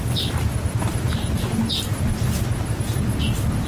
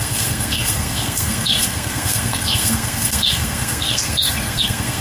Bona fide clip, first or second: first